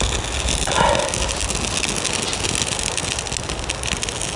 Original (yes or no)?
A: yes